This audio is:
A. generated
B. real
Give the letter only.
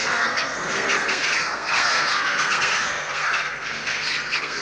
A